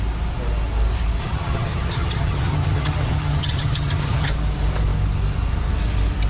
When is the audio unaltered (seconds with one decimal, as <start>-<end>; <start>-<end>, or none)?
0.0-1.2; 4.3-6.3